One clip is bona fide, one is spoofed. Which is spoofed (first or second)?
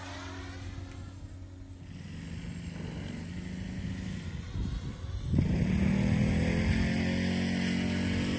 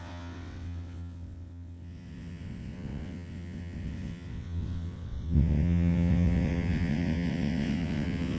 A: second